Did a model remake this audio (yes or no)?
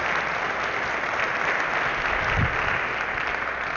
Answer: no